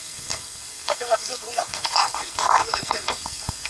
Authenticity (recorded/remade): remade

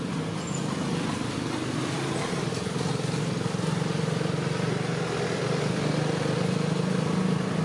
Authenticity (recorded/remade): recorded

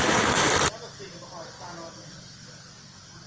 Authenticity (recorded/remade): recorded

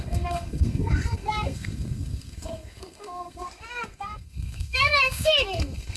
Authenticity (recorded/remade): remade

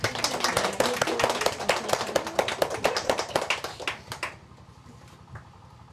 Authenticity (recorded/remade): recorded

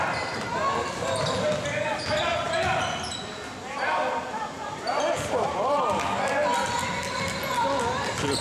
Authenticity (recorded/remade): recorded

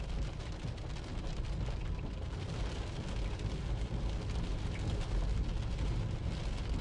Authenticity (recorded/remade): recorded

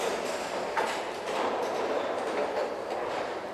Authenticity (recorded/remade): recorded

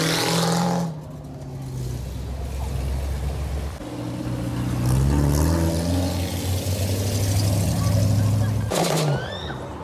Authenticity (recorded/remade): recorded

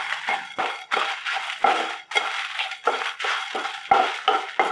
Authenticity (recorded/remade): recorded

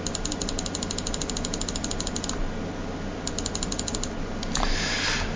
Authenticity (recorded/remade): recorded